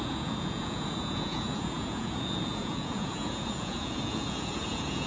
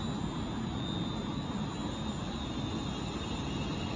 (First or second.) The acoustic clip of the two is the second